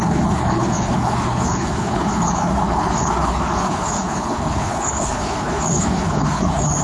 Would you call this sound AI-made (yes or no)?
yes